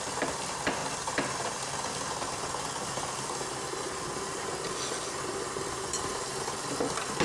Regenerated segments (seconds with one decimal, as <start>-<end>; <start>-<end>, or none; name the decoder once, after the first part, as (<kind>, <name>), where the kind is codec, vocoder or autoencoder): none